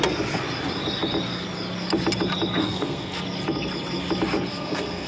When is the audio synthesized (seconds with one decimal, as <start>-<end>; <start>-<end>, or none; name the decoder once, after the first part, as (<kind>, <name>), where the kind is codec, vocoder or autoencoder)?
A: 2.6-3.2 (codec, SNAC); 4.5-5.1